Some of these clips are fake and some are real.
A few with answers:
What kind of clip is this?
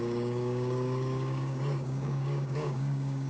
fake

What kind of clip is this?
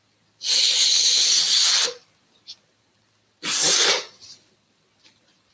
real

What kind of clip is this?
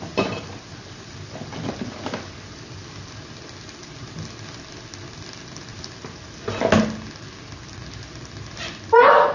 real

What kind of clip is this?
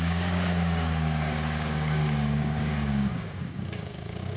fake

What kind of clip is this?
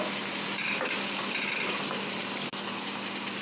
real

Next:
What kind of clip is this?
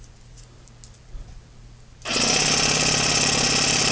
real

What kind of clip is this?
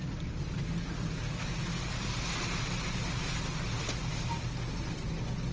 real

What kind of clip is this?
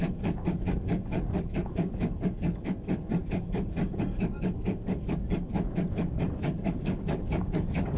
fake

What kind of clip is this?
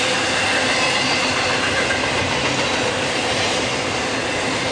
real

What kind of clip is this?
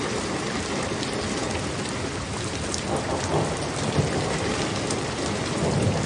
real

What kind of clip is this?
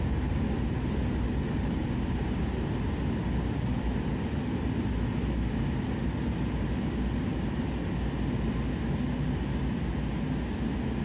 real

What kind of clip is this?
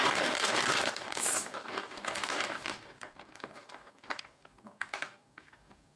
fake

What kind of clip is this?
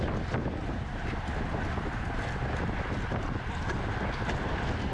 real